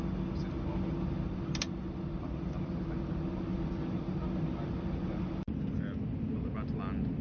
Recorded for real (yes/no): yes